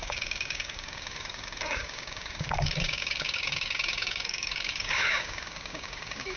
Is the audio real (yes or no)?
no